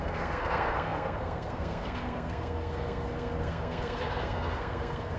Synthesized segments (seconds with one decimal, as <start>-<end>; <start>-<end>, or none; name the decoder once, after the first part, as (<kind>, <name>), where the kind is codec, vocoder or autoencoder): 0.0-5.2 (codec, SNAC)